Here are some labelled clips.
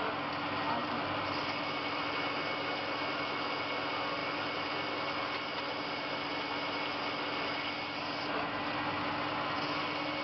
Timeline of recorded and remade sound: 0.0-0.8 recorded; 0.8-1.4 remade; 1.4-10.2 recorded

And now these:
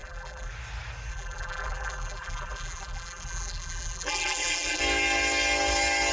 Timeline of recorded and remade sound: 0.0-0.5 remade; 0.5-1.1 recorded; 1.1-4.8 remade; 4.8-6.1 recorded

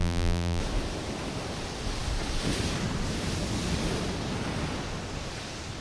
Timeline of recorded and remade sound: 0.0-0.6 remade; 0.6-5.8 recorded

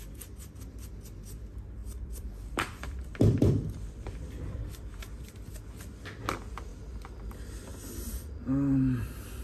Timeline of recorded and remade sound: 0.0-1.8 recorded; 1.8-5.0 remade; 5.0-9.4 recorded

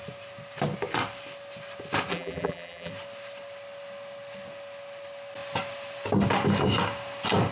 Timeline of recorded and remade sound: 0.0-2.1 recorded; 2.1-2.9 remade; 2.9-7.5 recorded

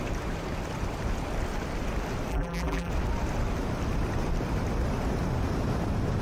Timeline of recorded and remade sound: 0.0-2.3 recorded; 2.3-2.9 remade; 2.9-6.2 recorded

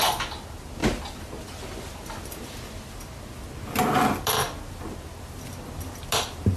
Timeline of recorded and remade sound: 0.0-6.6 recorded

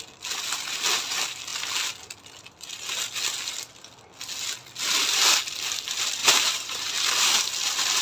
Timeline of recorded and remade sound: 0.0-6.2 recorded; 6.2-7.4 remade; 7.4-8.0 recorded